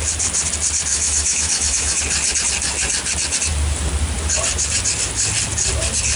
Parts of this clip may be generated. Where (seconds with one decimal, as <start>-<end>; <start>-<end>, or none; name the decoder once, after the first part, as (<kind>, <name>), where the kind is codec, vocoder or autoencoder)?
0.9-2.0 (autoencoder, DAC-VAE)